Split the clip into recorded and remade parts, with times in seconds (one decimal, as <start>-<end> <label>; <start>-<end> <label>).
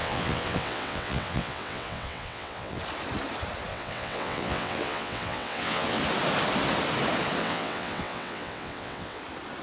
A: 0.0-2.8 remade; 2.8-3.7 recorded; 3.7-6.0 remade; 6.0-7.4 recorded; 7.4-9.2 remade; 9.2-9.6 recorded